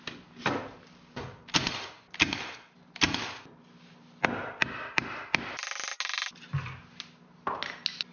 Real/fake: real